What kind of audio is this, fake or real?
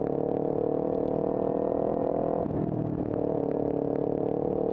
real